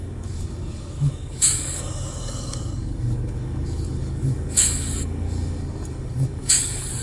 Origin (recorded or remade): remade